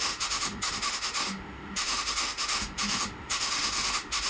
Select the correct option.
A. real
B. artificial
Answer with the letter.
B